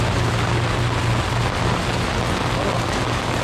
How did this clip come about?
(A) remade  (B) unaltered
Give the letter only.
B